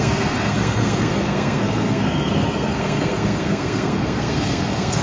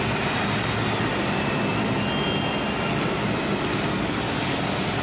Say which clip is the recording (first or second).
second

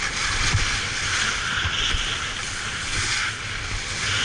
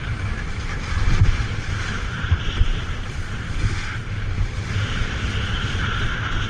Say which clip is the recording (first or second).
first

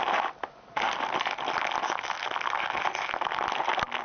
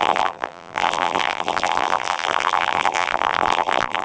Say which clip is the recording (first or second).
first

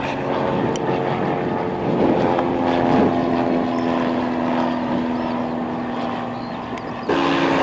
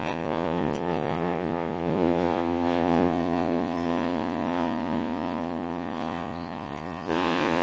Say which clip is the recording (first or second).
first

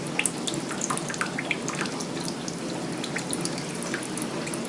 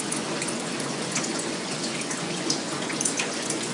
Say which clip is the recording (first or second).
first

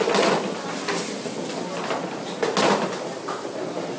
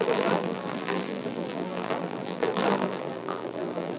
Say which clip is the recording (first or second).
first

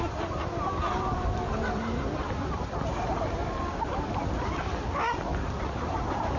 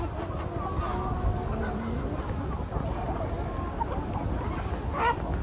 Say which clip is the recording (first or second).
second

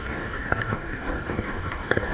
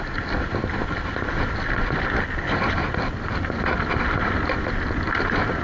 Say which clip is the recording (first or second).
second